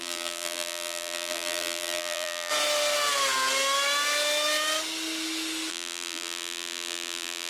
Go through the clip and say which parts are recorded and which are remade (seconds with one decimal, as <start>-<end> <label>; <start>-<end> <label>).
0.0-2.5 remade; 2.5-5.7 recorded; 5.7-7.5 remade